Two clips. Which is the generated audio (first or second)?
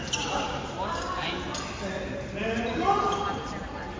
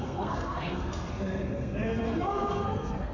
second